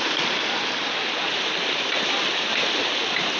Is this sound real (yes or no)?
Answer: yes